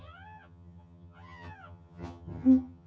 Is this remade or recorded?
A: remade